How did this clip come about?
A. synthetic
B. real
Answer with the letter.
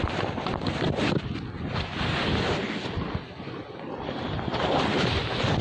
B